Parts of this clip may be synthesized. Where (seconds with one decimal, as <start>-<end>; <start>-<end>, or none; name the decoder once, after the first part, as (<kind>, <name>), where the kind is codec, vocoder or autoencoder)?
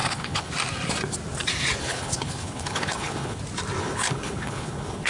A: 0.0-0.5 (codec, HILCodec); 1.8-3.4; 3.8-5.1